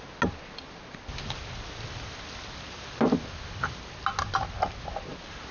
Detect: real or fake real